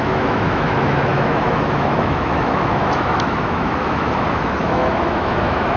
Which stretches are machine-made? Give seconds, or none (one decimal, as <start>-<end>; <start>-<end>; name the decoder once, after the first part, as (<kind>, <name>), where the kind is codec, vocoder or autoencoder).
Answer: 0.0-5.8 (autoencoder, DAC-VAE)